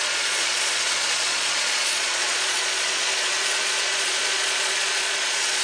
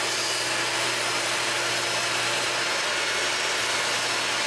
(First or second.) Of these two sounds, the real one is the second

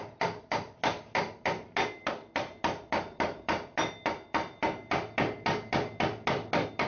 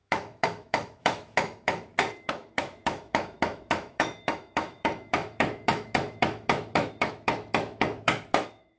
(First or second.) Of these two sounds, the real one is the first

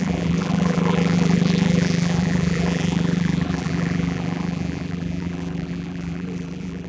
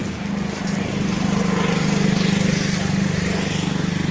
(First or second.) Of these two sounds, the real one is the second